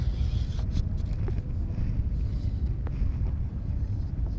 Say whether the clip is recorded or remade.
recorded